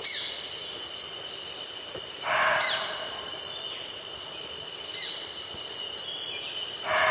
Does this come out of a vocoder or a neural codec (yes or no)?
no